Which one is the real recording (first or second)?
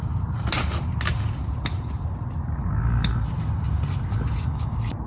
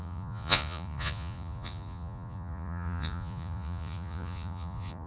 first